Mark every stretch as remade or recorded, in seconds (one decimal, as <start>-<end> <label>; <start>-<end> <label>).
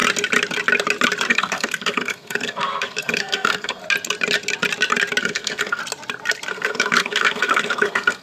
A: 0.0-1.3 recorded; 1.3-3.8 remade; 3.8-5.2 recorded; 5.2-5.8 remade; 5.8-6.5 recorded; 6.5-8.2 remade